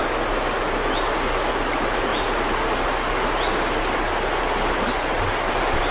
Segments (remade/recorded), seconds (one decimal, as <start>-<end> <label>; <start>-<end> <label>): 0.0-5.9 recorded